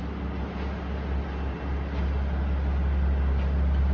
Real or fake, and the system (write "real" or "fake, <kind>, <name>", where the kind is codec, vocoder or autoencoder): real